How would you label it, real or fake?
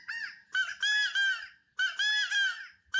real